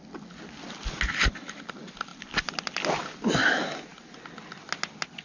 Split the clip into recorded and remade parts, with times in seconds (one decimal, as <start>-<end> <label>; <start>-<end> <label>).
0.0-5.2 recorded